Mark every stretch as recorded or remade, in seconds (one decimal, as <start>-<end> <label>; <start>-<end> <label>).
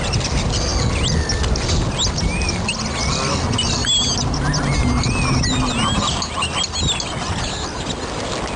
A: 0.0-8.6 recorded